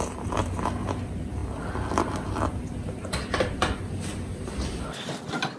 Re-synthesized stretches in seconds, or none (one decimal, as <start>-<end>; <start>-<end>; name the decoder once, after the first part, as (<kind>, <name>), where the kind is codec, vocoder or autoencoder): none